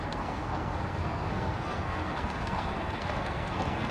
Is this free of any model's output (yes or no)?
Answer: no